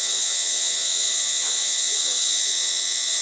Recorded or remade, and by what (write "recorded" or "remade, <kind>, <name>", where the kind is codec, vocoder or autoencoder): remade, vocoder, WaveNeXt